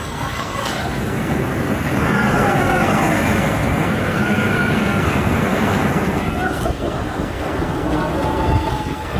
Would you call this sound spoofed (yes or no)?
yes